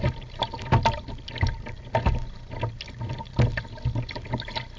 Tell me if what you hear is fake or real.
real